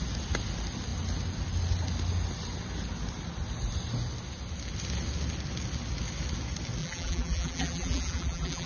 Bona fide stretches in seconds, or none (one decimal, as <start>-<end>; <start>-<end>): 0.0-6.8